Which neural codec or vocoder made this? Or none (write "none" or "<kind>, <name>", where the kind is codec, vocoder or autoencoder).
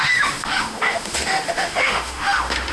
autoencoder, DAC-VAE